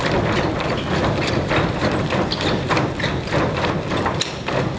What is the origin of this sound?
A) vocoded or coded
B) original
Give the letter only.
B